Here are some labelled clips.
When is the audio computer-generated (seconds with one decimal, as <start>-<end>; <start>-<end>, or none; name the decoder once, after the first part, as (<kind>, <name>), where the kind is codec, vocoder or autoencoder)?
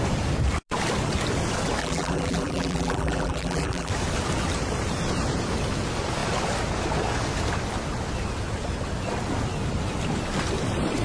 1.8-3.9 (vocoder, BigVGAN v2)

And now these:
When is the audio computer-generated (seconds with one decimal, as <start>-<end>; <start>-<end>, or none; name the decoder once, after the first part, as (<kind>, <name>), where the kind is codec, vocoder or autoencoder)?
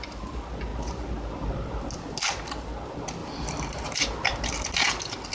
none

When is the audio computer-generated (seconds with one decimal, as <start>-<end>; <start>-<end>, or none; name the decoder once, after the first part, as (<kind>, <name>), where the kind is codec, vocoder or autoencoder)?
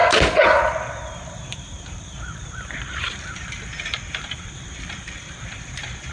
1.1-6.1 (vocoder, BigVGAN v2)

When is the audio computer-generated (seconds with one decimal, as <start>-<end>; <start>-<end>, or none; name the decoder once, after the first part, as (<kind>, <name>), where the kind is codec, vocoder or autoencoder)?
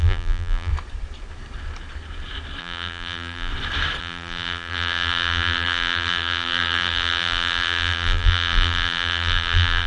0.0-0.7 (vocoder, BigVGAN v2); 2.6-3.5; 4.0-9.9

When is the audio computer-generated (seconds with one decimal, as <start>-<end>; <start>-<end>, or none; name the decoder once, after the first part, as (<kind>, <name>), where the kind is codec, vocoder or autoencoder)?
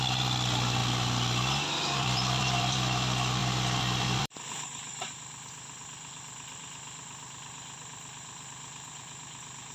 0.0-0.8 (vocoder, BigVGAN v2); 1.7-9.7